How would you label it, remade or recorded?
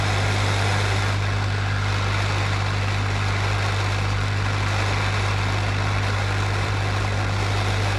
remade